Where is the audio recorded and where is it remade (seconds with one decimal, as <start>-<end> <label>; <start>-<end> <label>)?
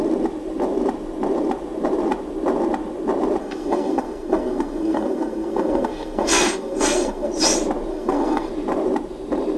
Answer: 0.0-3.4 recorded; 3.4-7.3 remade; 7.3-7.9 recorded; 7.9-8.5 remade; 8.5-9.6 recorded